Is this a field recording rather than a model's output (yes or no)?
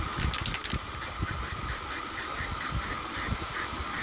yes